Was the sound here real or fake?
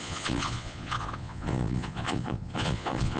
fake